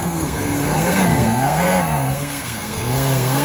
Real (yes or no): no